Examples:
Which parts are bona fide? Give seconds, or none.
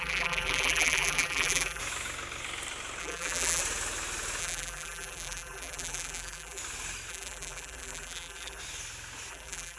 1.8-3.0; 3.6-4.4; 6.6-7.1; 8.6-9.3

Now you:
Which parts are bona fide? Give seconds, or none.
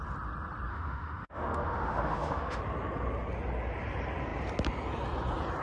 0.0-0.7; 2.6-5.6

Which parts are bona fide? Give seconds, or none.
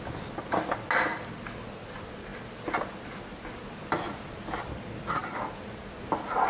0.0-6.5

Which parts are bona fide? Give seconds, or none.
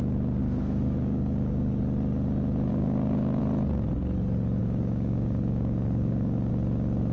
0.0-0.4; 1.8-2.7; 3.4-4.6; 6.5-7.1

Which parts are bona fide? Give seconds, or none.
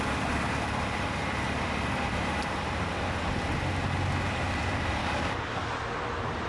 0.0-5.0; 5.7-6.5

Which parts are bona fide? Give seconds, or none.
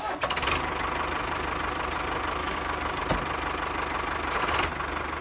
0.0-2.4; 3.0-5.2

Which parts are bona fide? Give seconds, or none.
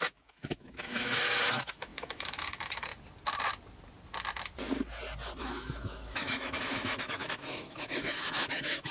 2.9-5.4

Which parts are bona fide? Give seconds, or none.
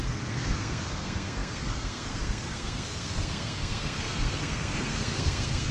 none